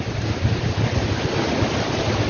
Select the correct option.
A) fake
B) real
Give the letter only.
B